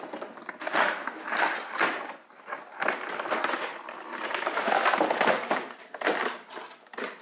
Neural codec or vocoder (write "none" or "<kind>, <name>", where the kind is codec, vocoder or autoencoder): none